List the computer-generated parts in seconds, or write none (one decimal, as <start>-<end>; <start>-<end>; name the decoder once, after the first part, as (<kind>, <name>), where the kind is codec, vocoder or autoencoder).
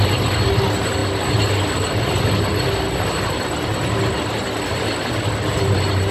none